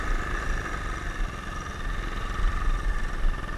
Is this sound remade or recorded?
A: remade